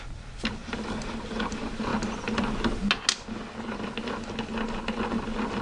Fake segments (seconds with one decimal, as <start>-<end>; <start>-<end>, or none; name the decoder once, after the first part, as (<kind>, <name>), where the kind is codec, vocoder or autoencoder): 0.0-1.9 (vocoder, BigVGAN v2)